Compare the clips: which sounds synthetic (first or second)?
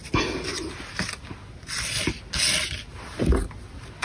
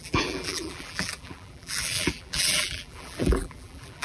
second